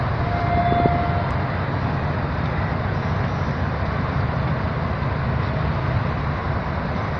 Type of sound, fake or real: real